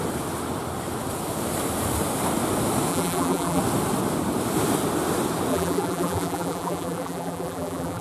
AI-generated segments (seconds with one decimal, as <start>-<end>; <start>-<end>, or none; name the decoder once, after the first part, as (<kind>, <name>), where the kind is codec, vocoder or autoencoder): 2.9-3.6 (vocoder, BigVGAN v2); 5.5-8.0